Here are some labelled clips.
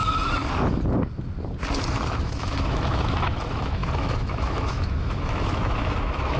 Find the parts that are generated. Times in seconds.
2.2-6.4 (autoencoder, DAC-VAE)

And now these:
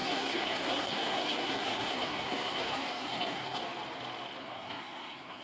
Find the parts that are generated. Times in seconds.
0.0-3.6 (codec, SNAC); 4.4-5.4

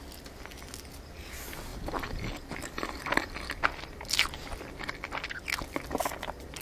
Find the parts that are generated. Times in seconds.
none

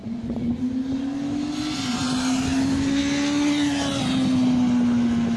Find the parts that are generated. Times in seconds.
0.0-0.6 (vocoder, Vocos)

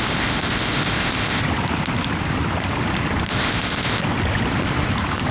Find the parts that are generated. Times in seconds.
0.0-1.4 (codec, ZipCodec); 3.3-4.0